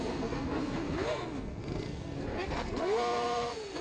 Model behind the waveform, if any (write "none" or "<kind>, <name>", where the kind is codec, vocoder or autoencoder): codec, SNAC